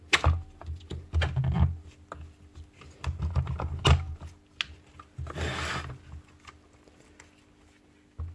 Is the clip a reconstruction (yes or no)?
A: no